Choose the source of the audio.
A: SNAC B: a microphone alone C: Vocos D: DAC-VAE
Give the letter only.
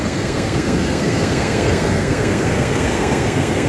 A